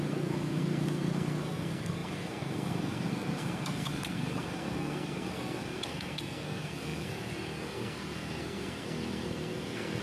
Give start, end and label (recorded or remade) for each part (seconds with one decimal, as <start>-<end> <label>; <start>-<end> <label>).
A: 0.0-10.0 remade